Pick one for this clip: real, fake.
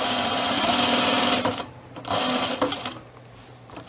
fake